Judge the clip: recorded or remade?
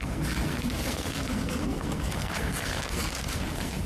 remade